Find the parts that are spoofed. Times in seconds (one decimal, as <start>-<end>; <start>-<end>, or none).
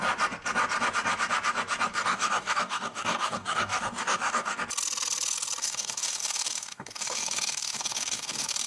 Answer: 1.9-4.6; 5.6-8.7